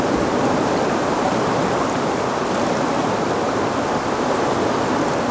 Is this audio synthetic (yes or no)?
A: no